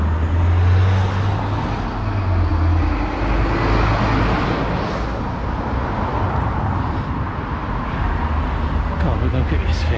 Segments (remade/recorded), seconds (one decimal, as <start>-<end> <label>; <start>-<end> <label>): 0.0-10.0 recorded